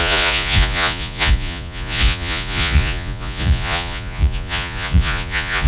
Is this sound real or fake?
fake